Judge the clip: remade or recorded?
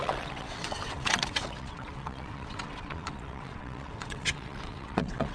remade